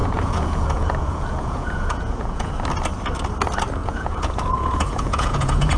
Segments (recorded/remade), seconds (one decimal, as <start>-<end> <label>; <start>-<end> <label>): 0.0-2.5 remade; 2.5-3.8 recorded; 3.8-5.8 remade